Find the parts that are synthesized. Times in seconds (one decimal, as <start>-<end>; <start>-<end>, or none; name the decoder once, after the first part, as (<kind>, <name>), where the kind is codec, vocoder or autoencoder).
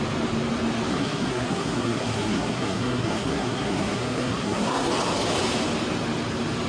0.9-4.9 (codec, SNAC)